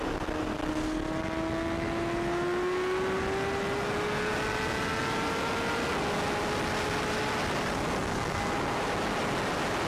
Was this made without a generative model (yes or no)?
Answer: yes